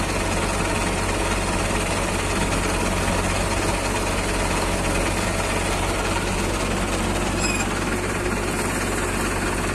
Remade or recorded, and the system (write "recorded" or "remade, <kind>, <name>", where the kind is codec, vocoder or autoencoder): recorded